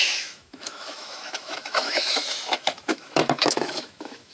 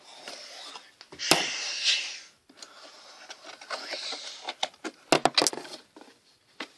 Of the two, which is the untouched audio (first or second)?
second